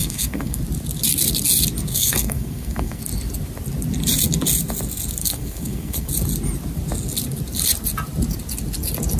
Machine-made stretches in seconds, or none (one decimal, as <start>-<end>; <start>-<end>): 0.0-0.6; 1.9-3.0; 5.2-6.1